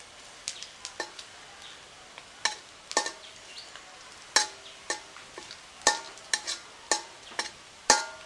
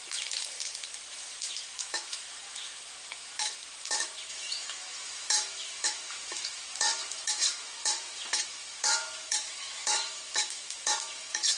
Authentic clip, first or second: first